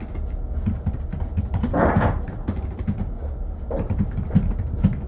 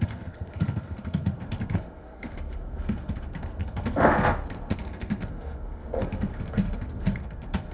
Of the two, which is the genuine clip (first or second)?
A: first